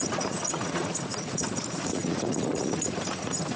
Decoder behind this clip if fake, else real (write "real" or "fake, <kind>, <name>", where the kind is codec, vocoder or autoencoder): fake, vocoder, Vocos